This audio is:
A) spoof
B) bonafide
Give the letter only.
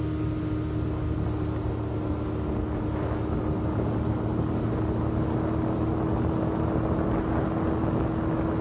B